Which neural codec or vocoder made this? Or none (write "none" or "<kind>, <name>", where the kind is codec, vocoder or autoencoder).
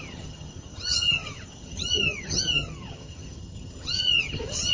vocoder, HiFi-GAN